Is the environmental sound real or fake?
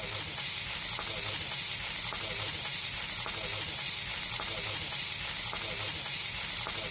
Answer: real